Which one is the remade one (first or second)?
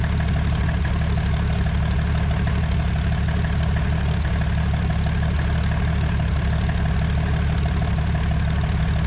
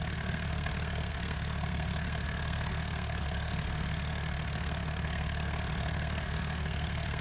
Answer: second